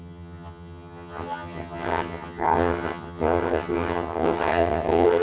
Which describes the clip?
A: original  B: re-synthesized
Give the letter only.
B